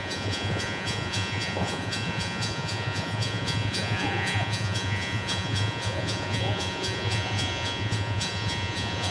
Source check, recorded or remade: remade